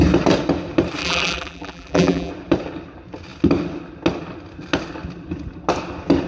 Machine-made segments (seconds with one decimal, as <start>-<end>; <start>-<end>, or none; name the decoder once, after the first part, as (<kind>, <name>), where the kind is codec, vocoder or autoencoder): 1.0-2.3 (vocoder, BigVGAN v2)